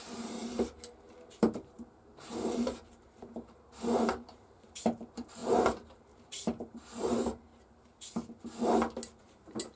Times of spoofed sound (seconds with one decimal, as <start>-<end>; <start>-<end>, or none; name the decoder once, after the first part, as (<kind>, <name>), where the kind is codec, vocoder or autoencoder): 0.0-0.4 (vocoder, BigVGAN v2); 1.0-7.5; 9.2-9.8